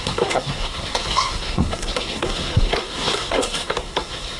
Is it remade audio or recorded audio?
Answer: remade